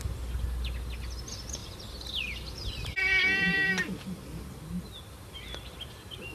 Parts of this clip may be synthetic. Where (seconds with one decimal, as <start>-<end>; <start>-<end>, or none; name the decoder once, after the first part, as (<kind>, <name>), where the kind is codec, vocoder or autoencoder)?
none